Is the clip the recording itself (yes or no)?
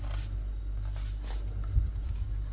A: yes